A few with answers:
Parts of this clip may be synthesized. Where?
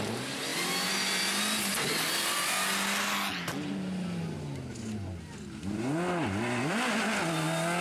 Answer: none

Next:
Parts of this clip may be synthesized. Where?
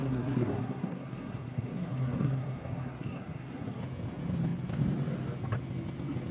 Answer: 0.0-3.8 (codec, SNAC)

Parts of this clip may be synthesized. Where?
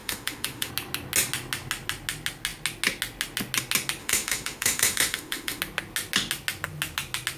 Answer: 0.0-0.7 (autoencoder, DAC-VAE); 4.0-5.6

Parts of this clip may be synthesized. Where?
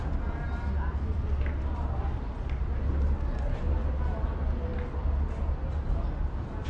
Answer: none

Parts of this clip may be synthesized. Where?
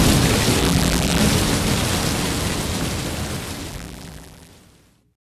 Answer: 0.6-1.2 (vocoder, BigVGAN v2); 3.7-4.5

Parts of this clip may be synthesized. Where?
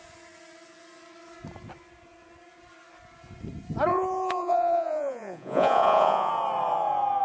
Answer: 3.9-6.3 (vocoder, Vocos)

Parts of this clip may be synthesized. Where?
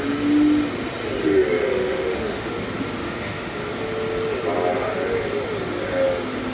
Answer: 1.2-2.5 (autoencoder, DAC-VAE); 3.0-3.6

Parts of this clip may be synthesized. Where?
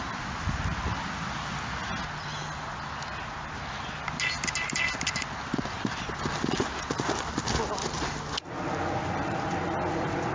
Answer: none